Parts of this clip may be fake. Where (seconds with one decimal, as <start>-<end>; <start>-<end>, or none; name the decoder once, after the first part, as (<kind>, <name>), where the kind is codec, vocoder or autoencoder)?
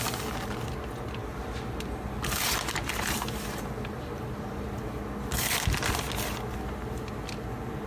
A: 1.2-5.0 (vocoder, BigVGAN v2)